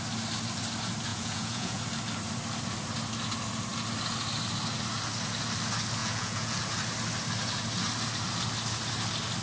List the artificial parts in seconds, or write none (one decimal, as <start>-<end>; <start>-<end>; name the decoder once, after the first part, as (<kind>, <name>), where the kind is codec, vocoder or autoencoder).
1.1-1.8 (vocoder, Vocos); 6.0-6.6

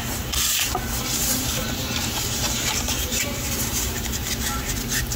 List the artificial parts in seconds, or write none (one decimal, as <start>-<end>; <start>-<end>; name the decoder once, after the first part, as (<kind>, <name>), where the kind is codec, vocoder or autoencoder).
1.2-4.3 (vocoder, BigVGAN v2)

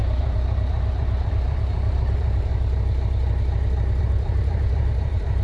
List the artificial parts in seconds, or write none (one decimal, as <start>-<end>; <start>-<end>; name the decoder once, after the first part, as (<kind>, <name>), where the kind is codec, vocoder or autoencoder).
0.0-2.5 (vocoder, BigVGAN v2); 4.0-5.4